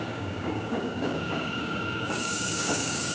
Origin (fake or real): fake